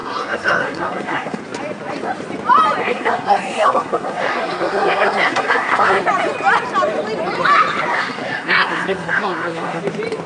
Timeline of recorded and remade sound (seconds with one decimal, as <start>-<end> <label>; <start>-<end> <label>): 0.0-1.4 remade; 1.4-2.8 recorded; 2.8-6.0 remade; 6.0-7.9 recorded; 7.9-9.8 remade; 9.8-10.3 recorded